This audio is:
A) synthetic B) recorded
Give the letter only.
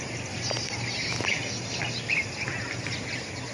B